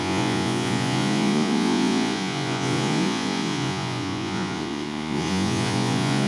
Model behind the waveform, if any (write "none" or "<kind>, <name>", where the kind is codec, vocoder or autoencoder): vocoder, Vocos